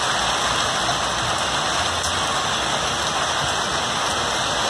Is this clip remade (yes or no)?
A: no